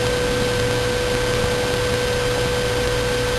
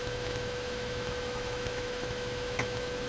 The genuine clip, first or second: first